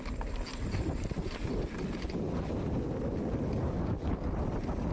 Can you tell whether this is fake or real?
real